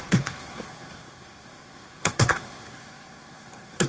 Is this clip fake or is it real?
fake